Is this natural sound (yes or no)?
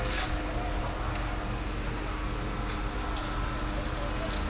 yes